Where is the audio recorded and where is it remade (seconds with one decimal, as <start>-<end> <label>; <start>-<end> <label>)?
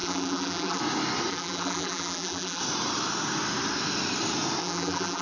0.0-0.8 remade; 0.8-1.3 recorded; 1.3-2.6 remade; 2.6-4.6 recorded; 4.6-5.2 remade